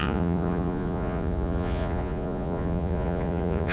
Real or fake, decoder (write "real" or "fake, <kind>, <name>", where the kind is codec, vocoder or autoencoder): fake, vocoder, Vocos